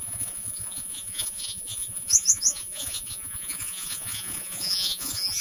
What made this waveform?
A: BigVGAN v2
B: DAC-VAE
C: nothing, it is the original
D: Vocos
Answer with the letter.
D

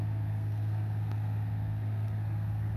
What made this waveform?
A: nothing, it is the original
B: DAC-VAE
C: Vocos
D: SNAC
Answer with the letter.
D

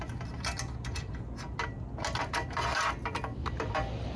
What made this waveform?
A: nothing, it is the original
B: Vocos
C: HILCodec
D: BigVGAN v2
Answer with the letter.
A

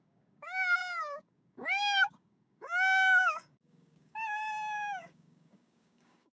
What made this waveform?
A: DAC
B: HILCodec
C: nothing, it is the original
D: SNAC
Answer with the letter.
A